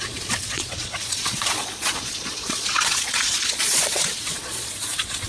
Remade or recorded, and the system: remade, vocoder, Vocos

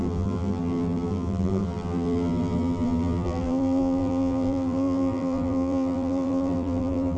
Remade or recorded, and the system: remade, vocoder, BigVGAN v2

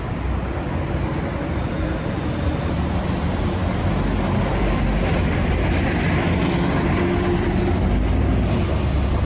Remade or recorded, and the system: recorded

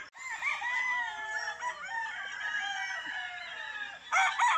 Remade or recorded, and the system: recorded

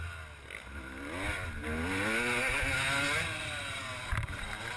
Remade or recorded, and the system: recorded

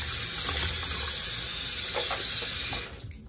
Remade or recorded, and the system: recorded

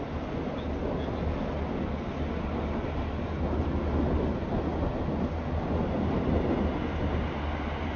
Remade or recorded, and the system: recorded